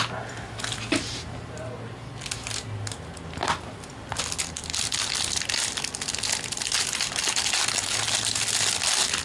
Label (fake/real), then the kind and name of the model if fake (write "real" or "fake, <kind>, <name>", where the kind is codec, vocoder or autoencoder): real